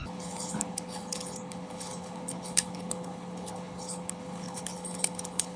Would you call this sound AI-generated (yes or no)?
yes